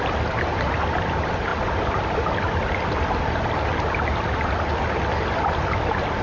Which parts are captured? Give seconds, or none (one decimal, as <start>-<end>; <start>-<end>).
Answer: 0.0-6.2